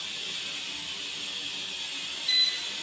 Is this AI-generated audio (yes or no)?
no